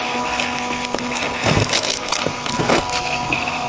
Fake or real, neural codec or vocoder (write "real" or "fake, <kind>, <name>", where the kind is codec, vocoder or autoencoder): fake, codec, SNAC